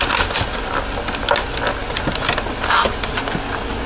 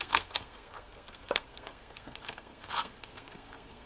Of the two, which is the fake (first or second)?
second